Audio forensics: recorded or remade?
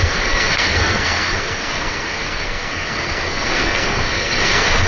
remade